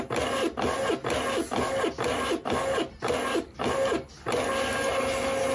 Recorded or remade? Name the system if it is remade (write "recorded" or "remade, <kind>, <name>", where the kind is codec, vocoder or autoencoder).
recorded